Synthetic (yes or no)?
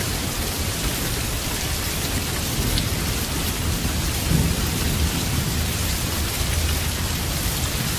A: no